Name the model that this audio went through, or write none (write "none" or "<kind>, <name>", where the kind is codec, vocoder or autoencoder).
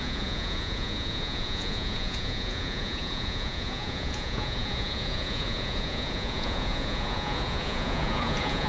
vocoder, Vocos